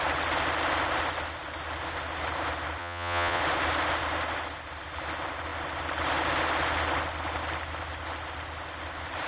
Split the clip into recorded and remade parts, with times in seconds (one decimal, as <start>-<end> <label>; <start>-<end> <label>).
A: 0.0-2.8 recorded; 2.8-3.4 remade; 3.4-9.3 recorded